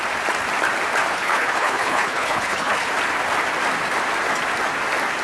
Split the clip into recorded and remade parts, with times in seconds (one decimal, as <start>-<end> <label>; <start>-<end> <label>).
0.0-1.1 recorded; 1.1-2.9 remade; 2.9-5.2 recorded